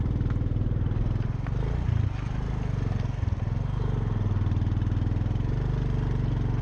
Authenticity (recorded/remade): recorded